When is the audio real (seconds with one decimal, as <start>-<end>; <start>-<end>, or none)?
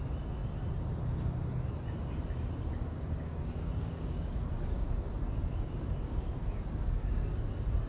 0.0-2.8; 7.4-7.9